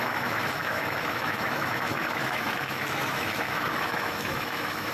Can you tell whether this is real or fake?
fake